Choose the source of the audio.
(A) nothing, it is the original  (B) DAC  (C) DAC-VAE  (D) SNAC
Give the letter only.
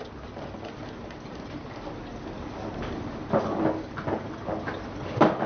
A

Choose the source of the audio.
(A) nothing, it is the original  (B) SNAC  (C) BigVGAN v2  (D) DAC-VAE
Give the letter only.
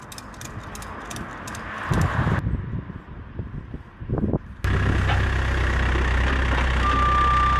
A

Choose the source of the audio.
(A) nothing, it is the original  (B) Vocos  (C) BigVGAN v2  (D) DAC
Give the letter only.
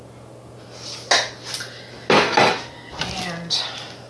A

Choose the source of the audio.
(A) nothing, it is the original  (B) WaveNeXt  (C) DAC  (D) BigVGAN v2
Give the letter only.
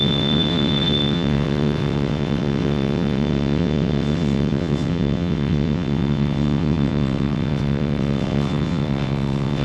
B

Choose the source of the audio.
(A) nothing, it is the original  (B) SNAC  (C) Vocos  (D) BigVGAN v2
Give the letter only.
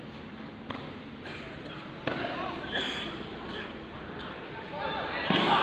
D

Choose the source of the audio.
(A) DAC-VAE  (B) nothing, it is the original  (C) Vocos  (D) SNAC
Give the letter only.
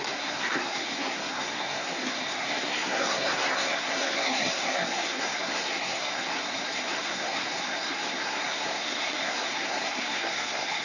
D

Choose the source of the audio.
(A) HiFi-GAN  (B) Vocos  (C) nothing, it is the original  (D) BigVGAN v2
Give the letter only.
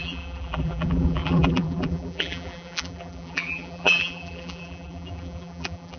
D